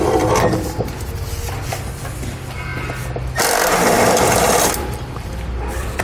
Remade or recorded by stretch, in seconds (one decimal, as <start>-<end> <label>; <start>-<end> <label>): 0.0-6.0 remade